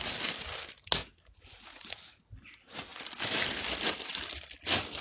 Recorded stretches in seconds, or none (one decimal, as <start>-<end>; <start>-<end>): 0.0-5.0